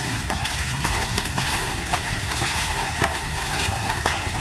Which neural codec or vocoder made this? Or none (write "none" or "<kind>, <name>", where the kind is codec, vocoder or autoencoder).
codec, SNAC